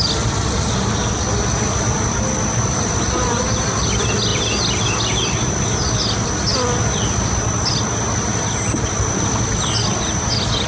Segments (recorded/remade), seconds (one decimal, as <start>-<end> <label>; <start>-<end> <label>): 0.0-10.7 recorded

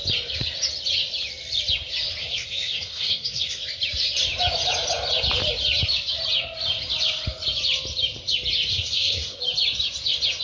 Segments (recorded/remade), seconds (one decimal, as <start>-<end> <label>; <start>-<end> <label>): 0.0-2.2 recorded; 2.2-3.6 remade; 3.6-8.7 recorded; 8.7-9.4 remade; 9.4-10.4 recorded

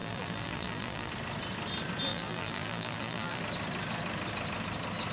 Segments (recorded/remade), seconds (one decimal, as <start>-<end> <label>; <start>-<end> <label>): 0.0-1.1 remade; 1.1-2.1 recorded; 2.1-3.4 remade; 3.4-5.1 recorded